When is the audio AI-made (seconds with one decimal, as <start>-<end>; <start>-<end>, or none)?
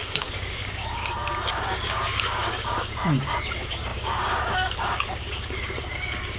0.0-1.0; 1.5-6.4